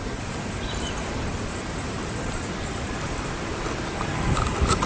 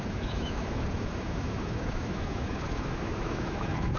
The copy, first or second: second